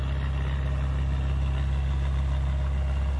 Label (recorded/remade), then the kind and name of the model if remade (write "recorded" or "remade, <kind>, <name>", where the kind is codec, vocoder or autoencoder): recorded